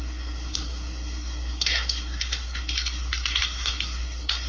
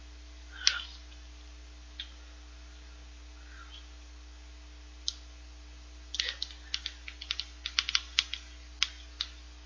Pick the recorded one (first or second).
second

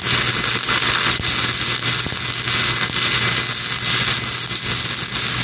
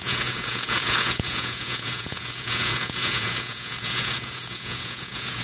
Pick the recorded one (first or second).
first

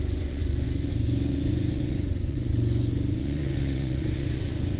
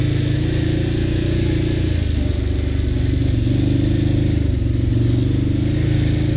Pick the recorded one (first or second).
second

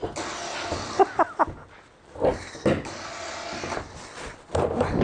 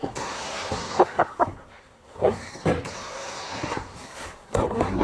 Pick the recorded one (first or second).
first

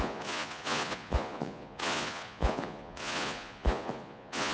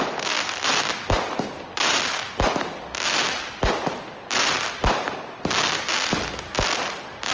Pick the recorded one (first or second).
second